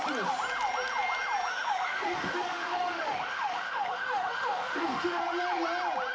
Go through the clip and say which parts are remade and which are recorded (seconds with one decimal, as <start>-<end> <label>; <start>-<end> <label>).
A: 0.0-1.5 recorded; 1.5-5.2 remade; 5.2-6.1 recorded